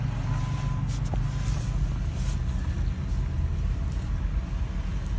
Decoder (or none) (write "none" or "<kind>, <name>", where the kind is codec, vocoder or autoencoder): none